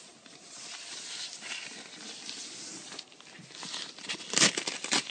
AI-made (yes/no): no